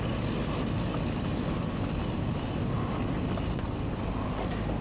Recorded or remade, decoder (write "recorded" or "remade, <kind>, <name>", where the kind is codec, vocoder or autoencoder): recorded